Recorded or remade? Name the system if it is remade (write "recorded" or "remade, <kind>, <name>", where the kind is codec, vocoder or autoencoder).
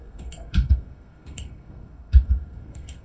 remade, codec, SNAC